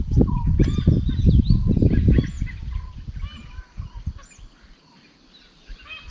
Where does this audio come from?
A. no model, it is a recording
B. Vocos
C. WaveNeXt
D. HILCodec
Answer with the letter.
A